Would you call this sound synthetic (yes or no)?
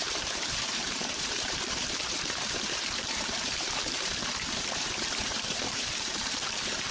yes